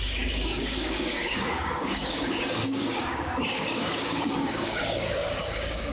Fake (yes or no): yes